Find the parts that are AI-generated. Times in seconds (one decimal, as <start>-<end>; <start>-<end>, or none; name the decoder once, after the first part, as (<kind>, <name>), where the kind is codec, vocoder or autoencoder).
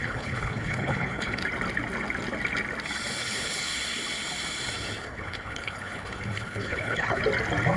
0.0-1.4 (codec, HILCodec); 3.2-3.7; 5.0-7.2